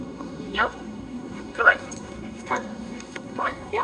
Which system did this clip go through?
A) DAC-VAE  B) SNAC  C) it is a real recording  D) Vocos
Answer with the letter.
B